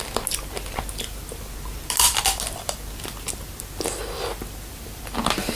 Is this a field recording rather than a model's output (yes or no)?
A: yes